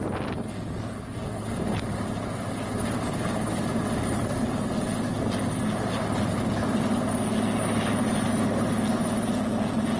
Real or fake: real